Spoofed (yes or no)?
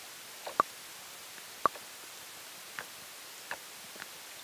no